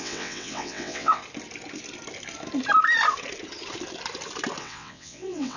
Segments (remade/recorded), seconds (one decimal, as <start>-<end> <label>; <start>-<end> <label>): 0.0-1.2 remade; 1.2-4.6 recorded; 4.6-5.6 remade